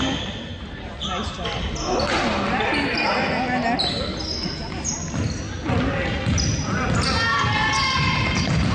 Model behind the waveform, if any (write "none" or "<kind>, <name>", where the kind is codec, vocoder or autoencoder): none